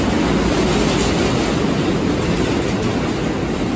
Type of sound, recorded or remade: recorded